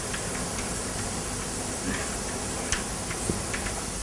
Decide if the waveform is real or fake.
real